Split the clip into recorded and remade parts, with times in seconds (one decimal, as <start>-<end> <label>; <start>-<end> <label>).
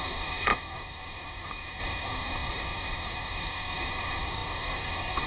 0.0-5.3 remade